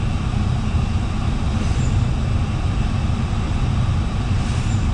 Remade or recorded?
recorded